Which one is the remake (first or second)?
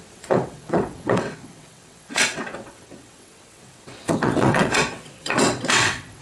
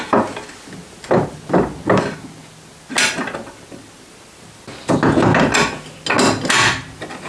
first